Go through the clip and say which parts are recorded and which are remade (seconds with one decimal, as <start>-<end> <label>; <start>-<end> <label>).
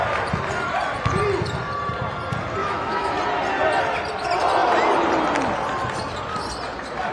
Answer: 0.0-2.6 recorded; 2.6-3.2 remade; 3.2-7.1 recorded